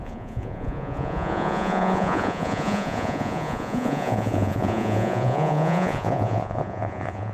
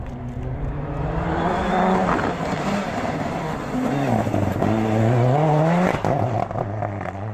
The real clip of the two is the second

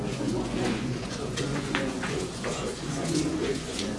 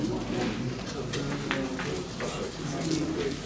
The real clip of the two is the second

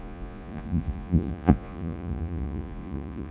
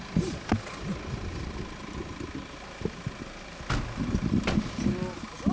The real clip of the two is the second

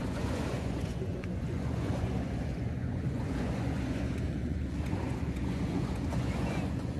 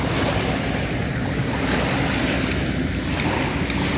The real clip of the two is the second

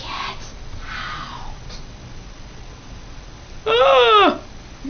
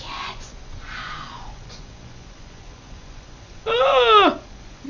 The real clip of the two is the first